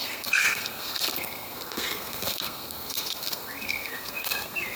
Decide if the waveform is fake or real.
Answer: fake